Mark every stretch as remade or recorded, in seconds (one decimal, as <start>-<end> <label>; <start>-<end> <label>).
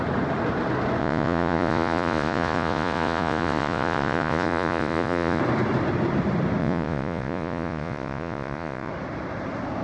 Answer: 0.0-1.0 recorded; 1.0-5.4 remade; 5.4-6.6 recorded; 6.6-8.9 remade; 8.9-9.8 recorded